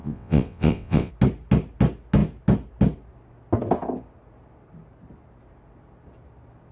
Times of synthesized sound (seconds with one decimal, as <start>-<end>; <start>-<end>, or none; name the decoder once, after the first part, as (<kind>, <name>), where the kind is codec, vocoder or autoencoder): 0.0-1.1 (vocoder, WaveNeXt)